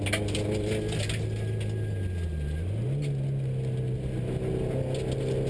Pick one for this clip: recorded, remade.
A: recorded